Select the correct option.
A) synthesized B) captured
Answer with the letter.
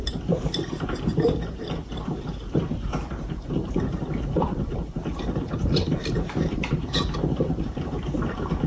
A